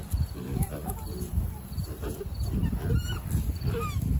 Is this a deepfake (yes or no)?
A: no